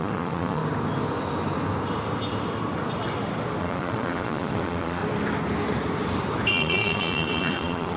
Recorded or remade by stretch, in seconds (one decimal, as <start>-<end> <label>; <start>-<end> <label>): 0.0-0.6 remade; 0.6-3.6 recorded; 3.6-5.0 remade; 5.0-6.5 recorded; 6.5-8.0 remade